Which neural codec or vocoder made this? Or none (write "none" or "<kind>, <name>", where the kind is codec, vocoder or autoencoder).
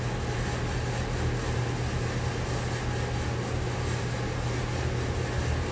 none